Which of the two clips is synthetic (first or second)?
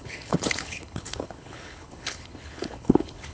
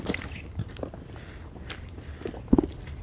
first